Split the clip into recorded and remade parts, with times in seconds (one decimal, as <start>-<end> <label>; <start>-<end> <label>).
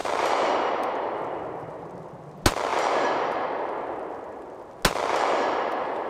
0.0-0.5 remade; 0.5-6.1 recorded